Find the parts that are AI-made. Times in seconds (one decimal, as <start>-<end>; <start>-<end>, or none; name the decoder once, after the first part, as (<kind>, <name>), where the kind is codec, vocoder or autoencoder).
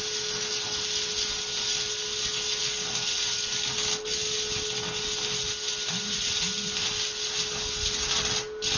none